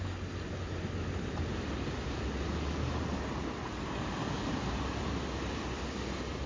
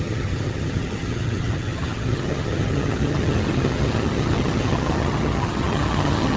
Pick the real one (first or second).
first